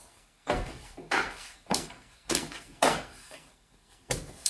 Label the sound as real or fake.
fake